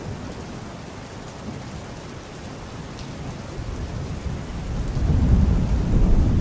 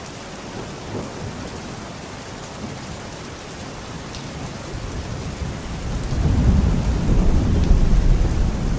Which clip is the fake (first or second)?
second